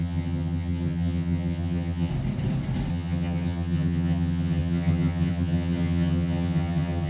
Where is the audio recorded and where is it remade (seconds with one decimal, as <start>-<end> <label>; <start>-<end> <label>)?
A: 0.0-2.1 remade; 2.1-2.9 recorded; 2.9-7.1 remade